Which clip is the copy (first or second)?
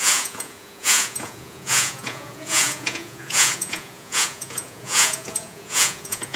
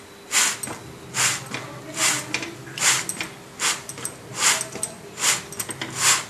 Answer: first